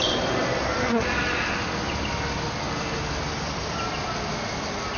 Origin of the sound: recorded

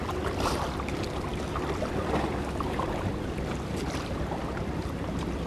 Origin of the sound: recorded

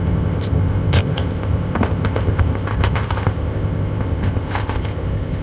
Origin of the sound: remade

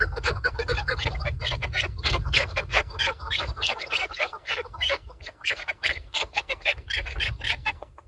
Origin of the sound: remade